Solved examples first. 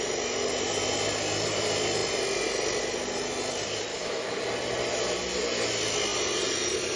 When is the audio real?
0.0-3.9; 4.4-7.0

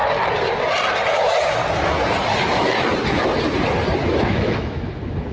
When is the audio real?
0.0-1.1; 1.6-2.4; 2.9-4.1

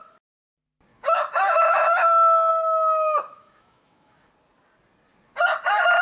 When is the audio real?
0.0-0.9; 2.0-2.5; 4.3-6.0

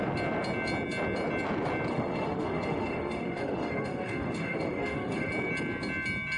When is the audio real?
0.0-1.9; 5.3-6.4